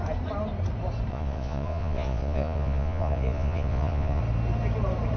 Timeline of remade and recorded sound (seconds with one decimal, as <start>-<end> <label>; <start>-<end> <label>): 0.0-1.1 recorded; 1.1-4.2 remade; 4.2-5.2 recorded